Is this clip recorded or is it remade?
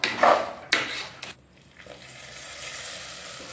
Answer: recorded